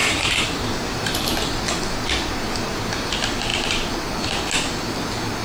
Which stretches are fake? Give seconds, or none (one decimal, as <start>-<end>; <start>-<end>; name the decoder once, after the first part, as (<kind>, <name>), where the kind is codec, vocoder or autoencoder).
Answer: 0.0-1.1 (vocoder, BigVGAN v2)